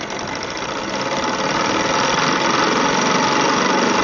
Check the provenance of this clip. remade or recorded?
recorded